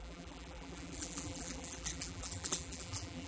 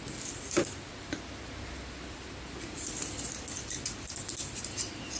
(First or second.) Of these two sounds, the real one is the second